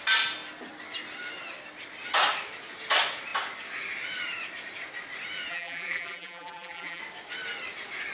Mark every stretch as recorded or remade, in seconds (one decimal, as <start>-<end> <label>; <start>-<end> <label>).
0.0-5.5 recorded; 5.5-7.0 remade; 7.0-8.1 recorded